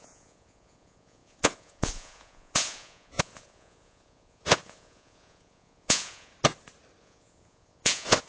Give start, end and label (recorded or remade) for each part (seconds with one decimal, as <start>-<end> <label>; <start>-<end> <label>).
0.0-6.3 remade; 6.3-7.0 recorded; 7.0-8.3 remade